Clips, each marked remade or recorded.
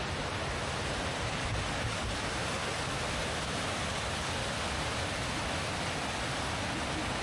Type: recorded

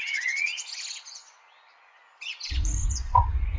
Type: remade